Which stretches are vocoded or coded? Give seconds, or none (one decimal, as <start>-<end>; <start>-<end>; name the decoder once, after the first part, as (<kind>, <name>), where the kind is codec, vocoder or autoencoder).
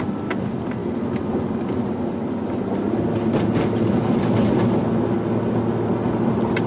none